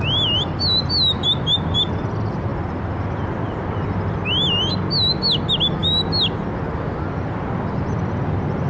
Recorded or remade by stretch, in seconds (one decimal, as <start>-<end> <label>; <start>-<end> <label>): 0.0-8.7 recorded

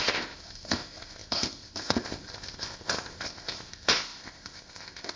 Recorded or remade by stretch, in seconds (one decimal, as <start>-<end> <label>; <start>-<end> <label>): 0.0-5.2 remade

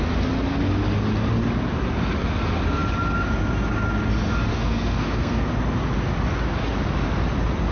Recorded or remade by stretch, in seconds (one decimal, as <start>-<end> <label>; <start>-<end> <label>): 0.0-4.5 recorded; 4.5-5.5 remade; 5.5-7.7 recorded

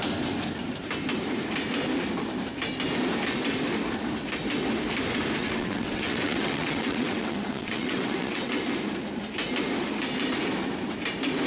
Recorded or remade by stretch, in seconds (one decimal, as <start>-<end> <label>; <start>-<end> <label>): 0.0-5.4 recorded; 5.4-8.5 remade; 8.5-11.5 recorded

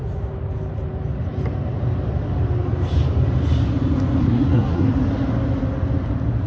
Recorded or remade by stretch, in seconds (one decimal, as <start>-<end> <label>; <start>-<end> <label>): 0.0-4.2 recorded; 4.2-4.9 remade; 4.9-6.5 recorded

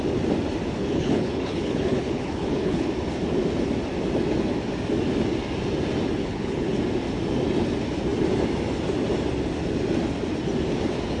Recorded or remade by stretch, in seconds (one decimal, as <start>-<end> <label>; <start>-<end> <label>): 0.0-0.8 recorded; 0.8-2.9 remade; 2.9-6.2 recorded; 6.2-6.8 remade; 6.8-11.2 recorded

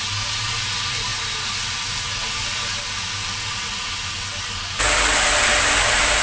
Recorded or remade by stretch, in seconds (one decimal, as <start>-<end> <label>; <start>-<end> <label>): 0.0-6.2 recorded